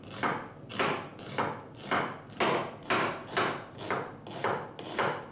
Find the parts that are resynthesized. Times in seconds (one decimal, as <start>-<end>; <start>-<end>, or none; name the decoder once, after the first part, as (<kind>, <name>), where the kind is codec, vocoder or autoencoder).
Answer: none